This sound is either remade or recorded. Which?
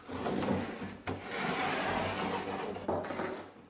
recorded